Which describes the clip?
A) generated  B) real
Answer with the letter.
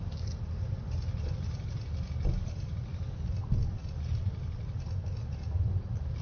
B